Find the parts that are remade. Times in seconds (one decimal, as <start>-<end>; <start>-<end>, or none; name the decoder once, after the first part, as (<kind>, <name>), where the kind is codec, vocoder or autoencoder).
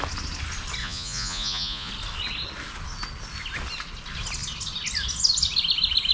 0.8-1.9 (vocoder, Vocos)